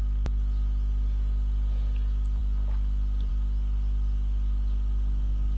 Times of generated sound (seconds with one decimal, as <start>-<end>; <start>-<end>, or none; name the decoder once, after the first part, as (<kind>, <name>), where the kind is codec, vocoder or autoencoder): none